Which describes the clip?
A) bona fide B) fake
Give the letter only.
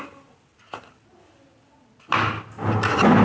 A